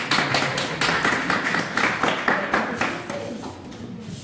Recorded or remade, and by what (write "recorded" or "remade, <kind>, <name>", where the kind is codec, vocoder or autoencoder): recorded